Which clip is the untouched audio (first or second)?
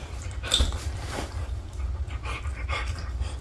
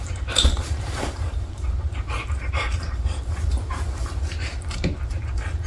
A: first